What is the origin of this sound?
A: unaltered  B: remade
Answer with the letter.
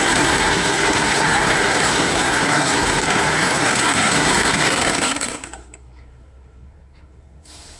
B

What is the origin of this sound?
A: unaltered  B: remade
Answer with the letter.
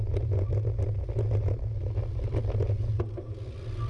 A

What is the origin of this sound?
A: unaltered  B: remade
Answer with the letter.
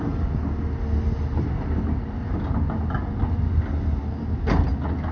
A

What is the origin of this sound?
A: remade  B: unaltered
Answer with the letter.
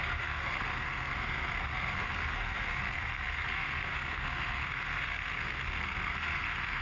A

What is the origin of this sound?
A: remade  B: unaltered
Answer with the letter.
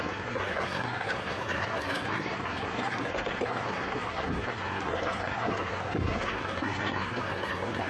A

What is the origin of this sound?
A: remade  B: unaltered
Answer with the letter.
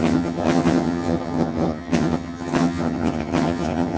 A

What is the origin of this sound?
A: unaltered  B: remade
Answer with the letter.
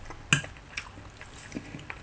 A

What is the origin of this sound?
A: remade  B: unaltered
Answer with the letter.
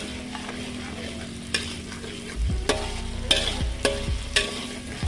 B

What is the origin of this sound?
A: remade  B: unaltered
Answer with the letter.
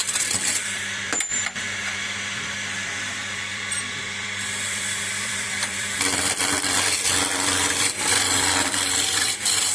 A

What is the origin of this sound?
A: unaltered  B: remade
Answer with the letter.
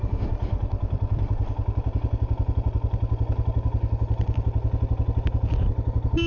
A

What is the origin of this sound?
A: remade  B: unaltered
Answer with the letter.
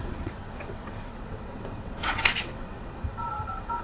A